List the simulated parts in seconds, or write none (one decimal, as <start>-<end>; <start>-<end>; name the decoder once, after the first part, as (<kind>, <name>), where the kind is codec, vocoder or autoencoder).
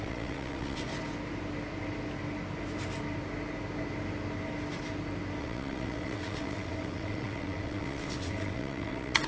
0.0-0.9 (vocoder, WaveNeXt); 5.4-9.3